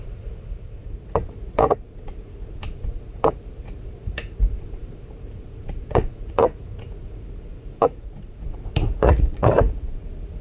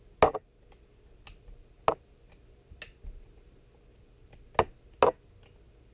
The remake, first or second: first